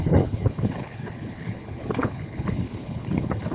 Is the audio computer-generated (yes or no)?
yes